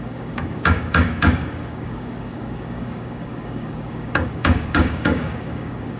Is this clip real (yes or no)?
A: no